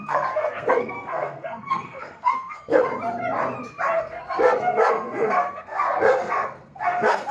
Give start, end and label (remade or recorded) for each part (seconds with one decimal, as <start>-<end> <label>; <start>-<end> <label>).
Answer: 0.0-2.9 remade; 2.9-4.0 recorded; 4.0-7.3 remade